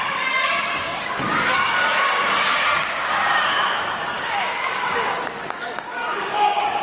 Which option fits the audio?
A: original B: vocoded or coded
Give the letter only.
B